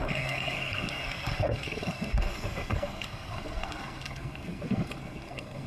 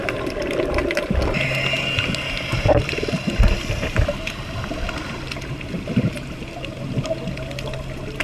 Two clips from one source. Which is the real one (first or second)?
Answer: second